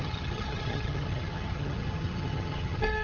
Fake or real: fake